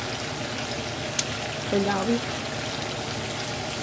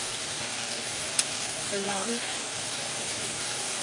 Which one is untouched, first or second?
first